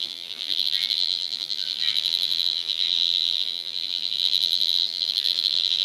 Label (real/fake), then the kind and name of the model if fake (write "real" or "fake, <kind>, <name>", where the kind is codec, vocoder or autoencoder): fake, vocoder, BigVGAN v2